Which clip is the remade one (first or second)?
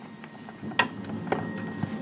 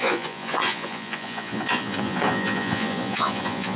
second